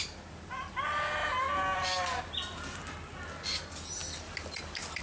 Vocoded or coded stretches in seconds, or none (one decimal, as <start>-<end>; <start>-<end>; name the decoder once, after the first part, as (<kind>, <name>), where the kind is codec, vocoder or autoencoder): none